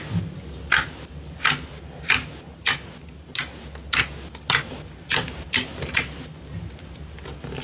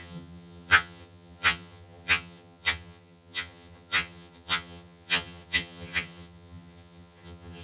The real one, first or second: first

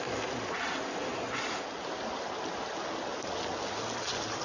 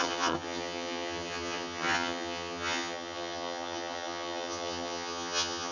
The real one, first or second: first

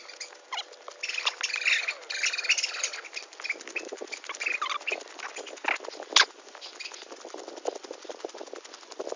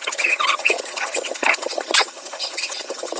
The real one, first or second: first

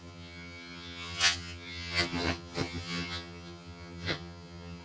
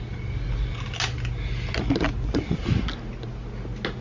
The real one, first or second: second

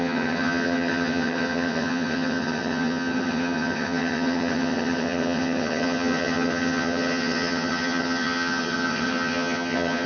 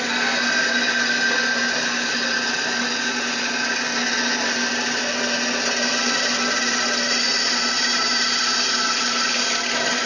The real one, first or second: second